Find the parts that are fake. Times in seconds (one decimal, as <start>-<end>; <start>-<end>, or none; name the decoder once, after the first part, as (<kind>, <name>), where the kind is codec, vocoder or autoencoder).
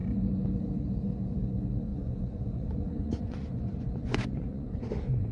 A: 1.9-5.3 (vocoder, Vocos)